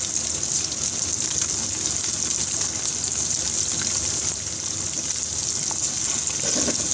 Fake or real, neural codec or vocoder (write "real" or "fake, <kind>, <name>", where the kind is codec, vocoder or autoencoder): real